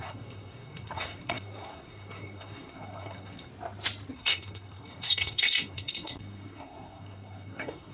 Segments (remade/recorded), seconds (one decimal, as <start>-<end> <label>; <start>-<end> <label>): 0.0-3.5 remade; 3.5-4.1 recorded; 4.1-7.9 remade